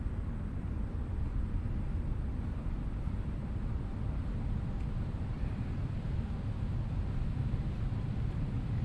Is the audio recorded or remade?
recorded